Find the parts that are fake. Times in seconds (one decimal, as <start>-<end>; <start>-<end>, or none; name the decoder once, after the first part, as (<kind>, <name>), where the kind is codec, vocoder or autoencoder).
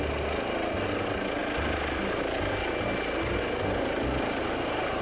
none